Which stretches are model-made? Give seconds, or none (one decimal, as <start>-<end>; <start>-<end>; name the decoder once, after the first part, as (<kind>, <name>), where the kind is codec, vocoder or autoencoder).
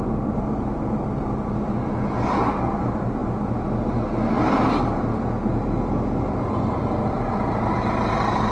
none